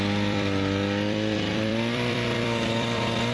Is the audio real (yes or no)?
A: no